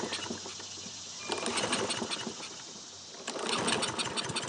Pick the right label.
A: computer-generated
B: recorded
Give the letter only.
B